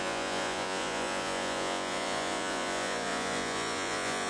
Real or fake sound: fake